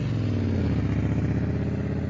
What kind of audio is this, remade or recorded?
recorded